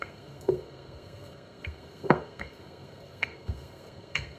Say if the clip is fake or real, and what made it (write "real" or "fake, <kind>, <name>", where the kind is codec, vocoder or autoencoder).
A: fake, codec, SNAC